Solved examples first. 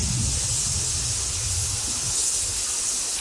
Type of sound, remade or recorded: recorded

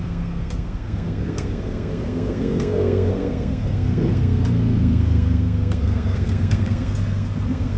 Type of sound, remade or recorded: remade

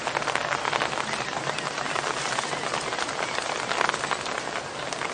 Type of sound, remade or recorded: recorded